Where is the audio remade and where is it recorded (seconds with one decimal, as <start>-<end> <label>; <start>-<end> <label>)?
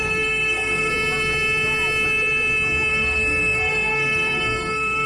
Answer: 0.0-0.9 remade; 0.9-2.9 recorded; 2.9-5.1 remade